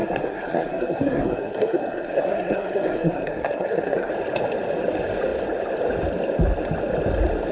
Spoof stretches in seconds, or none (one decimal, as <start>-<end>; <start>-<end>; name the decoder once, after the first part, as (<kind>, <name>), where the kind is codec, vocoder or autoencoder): 0.0-4.1 (codec, SNAC)